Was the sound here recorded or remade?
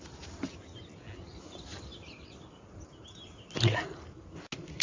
recorded